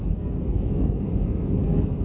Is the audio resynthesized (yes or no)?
yes